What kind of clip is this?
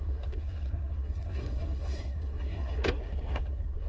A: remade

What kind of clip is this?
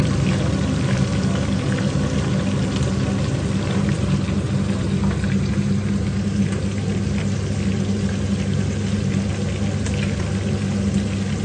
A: recorded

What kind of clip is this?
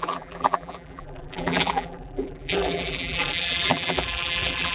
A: remade